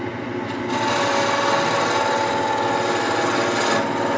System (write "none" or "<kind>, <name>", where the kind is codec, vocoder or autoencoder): none